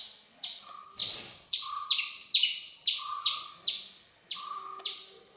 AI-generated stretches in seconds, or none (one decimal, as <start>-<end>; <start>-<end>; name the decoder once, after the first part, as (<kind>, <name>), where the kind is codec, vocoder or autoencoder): none